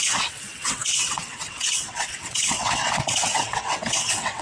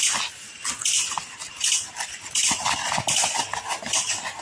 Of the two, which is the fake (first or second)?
first